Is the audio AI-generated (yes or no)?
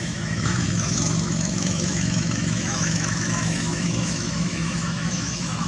yes